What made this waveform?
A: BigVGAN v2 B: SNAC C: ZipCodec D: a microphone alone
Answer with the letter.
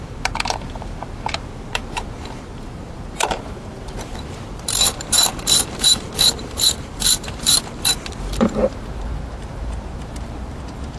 A